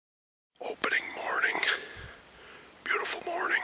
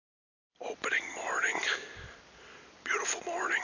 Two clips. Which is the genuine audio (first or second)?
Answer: second